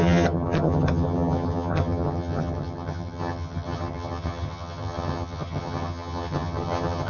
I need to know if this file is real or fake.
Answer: fake